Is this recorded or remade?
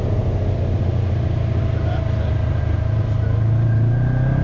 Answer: recorded